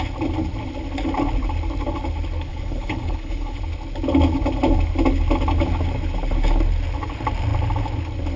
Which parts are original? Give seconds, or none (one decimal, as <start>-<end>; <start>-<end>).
0.0-2.5; 3.6-8.4